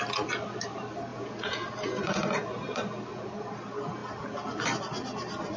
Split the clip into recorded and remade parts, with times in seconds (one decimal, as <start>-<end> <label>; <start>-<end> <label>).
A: 0.0-1.1 recorded; 1.1-1.7 remade; 1.7-5.6 recorded